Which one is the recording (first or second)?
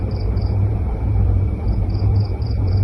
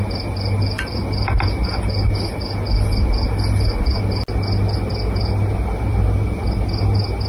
second